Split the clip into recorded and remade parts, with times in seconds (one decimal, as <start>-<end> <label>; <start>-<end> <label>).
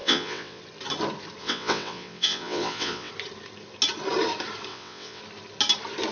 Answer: 0.0-0.6 remade; 0.6-1.4 recorded; 1.4-3.1 remade; 3.1-4.7 recorded; 4.7-5.2 remade; 5.2-6.1 recorded